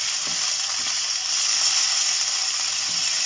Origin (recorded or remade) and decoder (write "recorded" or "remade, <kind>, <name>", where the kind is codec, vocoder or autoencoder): recorded